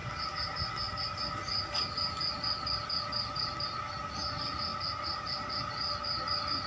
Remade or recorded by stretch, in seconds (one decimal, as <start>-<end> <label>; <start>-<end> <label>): 0.0-6.7 recorded